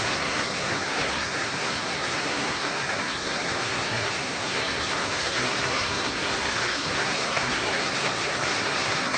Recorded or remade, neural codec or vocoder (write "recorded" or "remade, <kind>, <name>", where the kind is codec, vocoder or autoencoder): remade, codec, SNAC